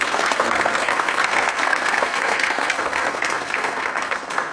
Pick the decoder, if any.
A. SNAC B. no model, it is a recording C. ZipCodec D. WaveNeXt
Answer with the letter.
A